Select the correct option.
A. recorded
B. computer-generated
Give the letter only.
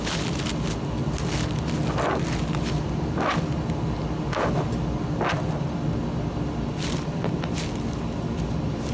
A